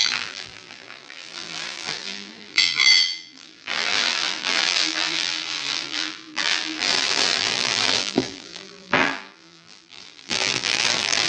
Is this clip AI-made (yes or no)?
yes